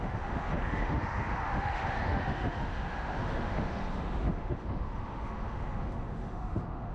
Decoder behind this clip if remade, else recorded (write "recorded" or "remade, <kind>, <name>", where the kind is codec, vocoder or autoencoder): remade, autoencoder, DAC-VAE